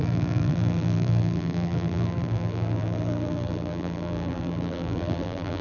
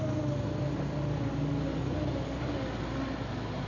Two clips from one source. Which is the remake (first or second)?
first